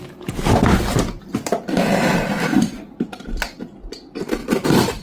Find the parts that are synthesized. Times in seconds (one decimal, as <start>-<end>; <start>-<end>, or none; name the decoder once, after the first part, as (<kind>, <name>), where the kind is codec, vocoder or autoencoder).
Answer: 4.4-5.0 (vocoder, BigVGAN v2)